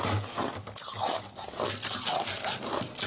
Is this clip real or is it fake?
real